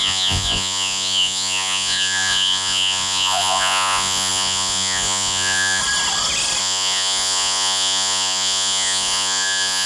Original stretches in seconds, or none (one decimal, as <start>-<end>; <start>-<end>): 5.8-6.6